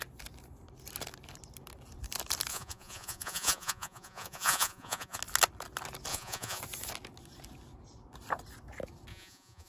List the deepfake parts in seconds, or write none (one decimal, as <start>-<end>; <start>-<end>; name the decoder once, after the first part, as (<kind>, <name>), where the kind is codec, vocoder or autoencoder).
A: 2.5-5.2 (vocoder, Vocos); 6.1-6.6; 9.1-9.7